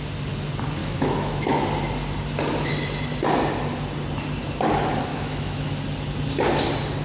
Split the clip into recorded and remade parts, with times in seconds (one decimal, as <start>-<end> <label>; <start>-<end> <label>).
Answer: 0.0-0.8 recorded; 0.8-1.6 remade; 1.6-5.1 recorded; 5.1-5.7 remade; 5.7-7.0 recorded